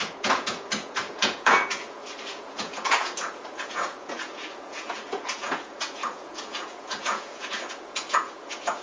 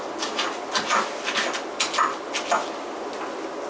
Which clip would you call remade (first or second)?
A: first